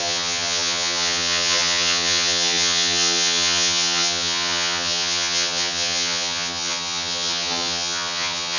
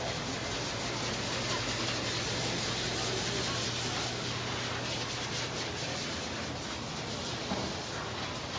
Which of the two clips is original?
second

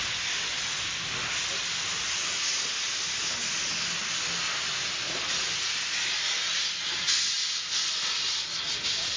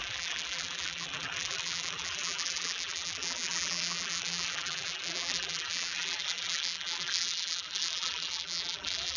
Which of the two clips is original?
first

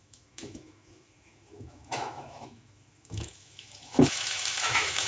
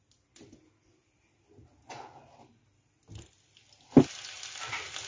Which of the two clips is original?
second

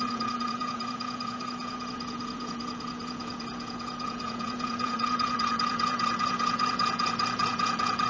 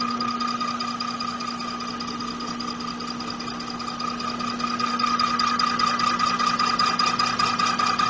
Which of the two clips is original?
second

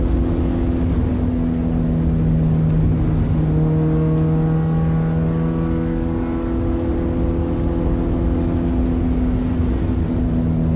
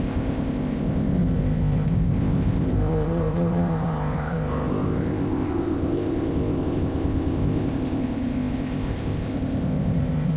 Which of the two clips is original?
first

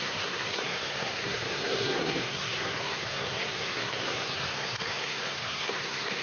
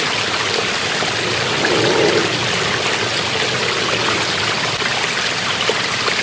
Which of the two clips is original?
second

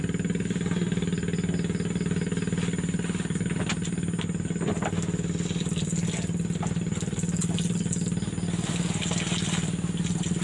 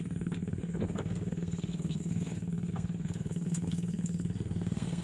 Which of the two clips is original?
first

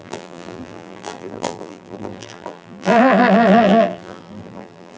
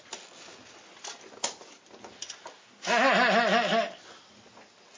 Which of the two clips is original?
second